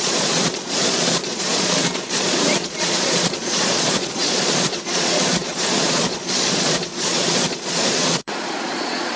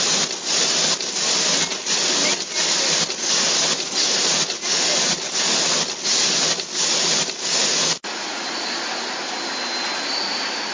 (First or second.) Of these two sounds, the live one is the second